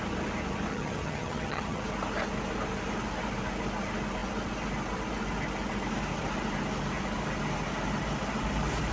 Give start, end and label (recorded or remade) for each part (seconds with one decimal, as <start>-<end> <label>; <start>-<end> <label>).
0.0-0.7 recorded; 0.7-1.8 remade; 1.8-8.9 recorded